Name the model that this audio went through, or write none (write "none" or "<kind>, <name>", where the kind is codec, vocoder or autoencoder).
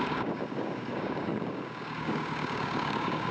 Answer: codec, DAC